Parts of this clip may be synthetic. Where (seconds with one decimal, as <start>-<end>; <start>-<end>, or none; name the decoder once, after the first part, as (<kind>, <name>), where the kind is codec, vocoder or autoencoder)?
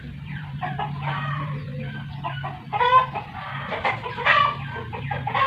0.0-1.7 (vocoder, BigVGAN v2); 5.0-5.5